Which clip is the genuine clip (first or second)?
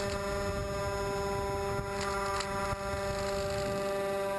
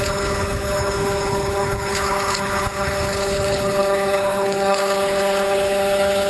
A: first